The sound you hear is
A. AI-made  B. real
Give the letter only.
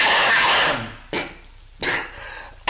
B